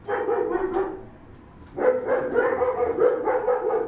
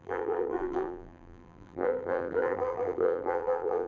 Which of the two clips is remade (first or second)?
second